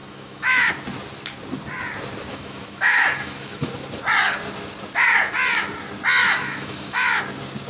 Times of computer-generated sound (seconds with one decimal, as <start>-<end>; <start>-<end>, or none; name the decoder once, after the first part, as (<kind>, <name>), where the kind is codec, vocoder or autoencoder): 0.0-0.7 (autoencoder, DAC-VAE); 2.3-3.7; 6.2-7.2